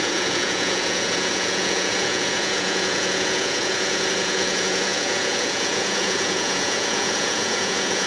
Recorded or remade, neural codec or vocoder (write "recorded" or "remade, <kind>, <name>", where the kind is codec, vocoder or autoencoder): remade, vocoder, Vocos